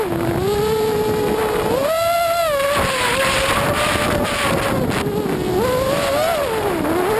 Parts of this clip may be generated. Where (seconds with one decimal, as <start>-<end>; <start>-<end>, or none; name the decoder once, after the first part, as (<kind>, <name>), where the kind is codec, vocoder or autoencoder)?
none

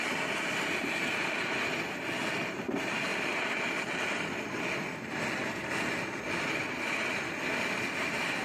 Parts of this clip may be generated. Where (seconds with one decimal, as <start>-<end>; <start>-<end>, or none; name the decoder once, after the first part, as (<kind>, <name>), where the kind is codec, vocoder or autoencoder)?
none

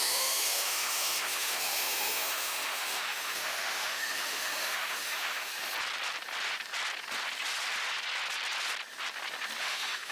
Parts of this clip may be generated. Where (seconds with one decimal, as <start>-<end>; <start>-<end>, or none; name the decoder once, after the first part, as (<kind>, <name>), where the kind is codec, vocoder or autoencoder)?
0.0-5.5 (autoencoder, DAC-VAE); 9.6-10.1

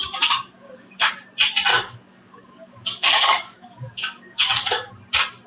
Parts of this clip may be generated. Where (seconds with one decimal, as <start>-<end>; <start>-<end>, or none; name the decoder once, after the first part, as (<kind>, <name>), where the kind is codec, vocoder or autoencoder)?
0.0-1.1 (codec, DAC); 1.7-4.9

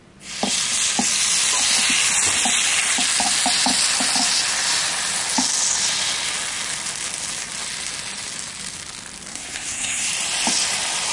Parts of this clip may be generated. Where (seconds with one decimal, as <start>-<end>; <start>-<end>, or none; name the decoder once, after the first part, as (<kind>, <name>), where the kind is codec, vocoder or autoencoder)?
9.3-10.1 (codec, SNAC)